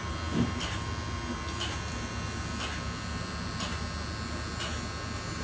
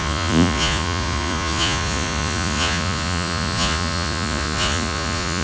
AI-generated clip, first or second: second